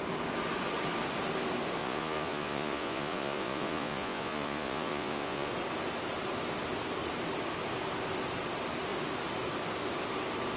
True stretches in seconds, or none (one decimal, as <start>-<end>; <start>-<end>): 0.0-1.8; 5.5-10.6